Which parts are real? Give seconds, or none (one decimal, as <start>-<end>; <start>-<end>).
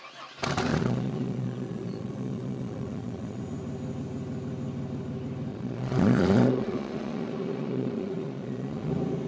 0.0-0.7; 3.4-5.5; 8.9-9.3